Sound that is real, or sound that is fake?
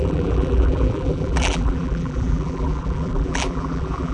fake